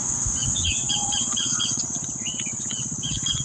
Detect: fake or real fake